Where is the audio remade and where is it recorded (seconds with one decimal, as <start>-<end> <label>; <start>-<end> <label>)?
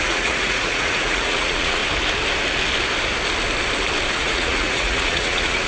0.0-1.8 remade; 1.8-4.1 recorded; 4.1-5.7 remade